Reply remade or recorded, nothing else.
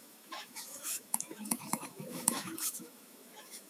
remade